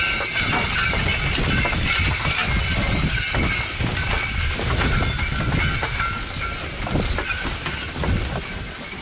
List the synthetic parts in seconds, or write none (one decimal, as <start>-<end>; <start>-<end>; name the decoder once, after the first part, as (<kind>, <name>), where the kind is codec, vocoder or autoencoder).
none